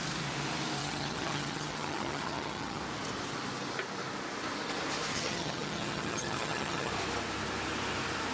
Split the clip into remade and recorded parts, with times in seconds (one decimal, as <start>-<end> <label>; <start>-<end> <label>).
0.0-0.8 recorded; 0.8-2.8 remade; 2.8-5.1 recorded; 5.1-6.9 remade; 6.9-8.3 recorded